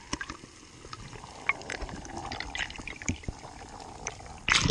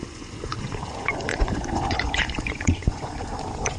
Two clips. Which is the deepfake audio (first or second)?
second